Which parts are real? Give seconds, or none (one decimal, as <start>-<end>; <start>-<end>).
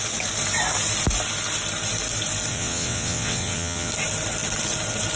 0.0-2.5; 3.9-5.2